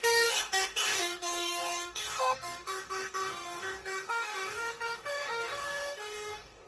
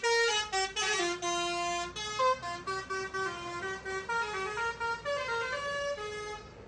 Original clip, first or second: second